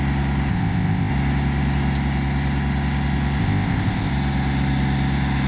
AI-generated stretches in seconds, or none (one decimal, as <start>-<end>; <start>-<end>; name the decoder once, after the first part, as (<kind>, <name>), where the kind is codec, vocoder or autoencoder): 0.5-1.1 (codec, ZipCodec); 3.4-4.1